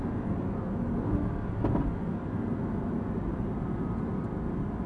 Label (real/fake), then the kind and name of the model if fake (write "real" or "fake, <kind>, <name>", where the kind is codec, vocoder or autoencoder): real